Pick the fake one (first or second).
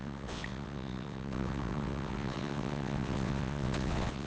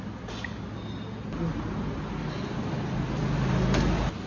first